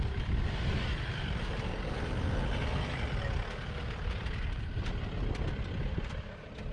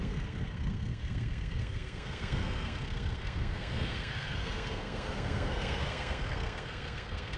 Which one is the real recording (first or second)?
first